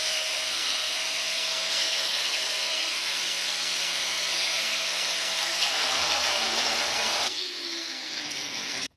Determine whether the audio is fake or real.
fake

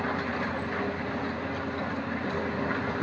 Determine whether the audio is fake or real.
real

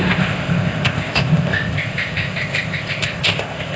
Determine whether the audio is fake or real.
fake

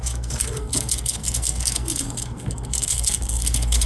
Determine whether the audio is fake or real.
fake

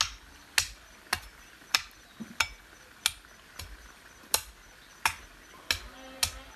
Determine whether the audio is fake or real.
real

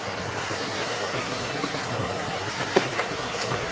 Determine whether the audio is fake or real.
fake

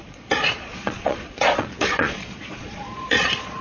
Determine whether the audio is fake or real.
fake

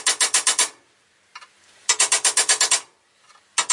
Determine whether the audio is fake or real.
real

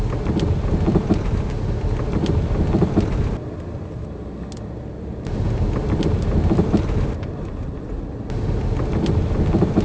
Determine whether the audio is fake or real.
real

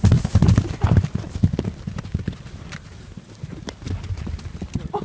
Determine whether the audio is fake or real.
real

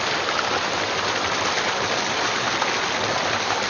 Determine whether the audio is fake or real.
real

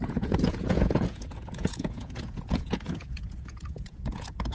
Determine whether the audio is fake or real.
fake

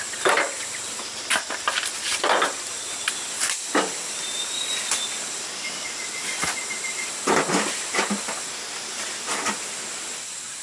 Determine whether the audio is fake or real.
fake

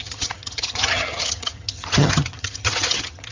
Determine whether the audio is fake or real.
fake